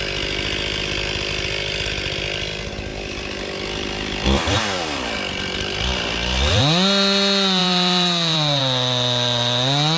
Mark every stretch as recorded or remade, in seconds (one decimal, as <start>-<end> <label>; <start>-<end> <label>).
0.0-2.9 recorded; 2.9-6.6 remade; 6.6-7.6 recorded; 7.6-8.6 remade; 8.6-10.0 recorded

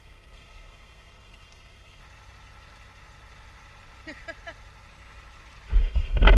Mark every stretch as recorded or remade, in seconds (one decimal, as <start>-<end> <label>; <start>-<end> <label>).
0.0-2.0 remade; 2.0-5.8 recorded; 5.8-6.4 remade

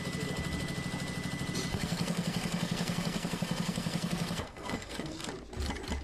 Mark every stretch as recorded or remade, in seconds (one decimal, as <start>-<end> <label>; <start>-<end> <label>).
0.0-1.7 recorded; 1.7-5.3 remade; 5.3-6.0 recorded